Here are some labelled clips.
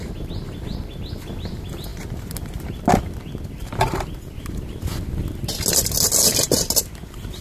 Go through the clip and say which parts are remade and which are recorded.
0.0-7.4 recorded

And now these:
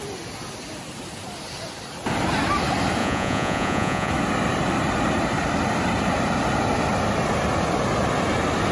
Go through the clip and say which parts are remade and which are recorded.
0.0-3.0 recorded; 3.0-4.1 remade; 4.1-8.7 recorded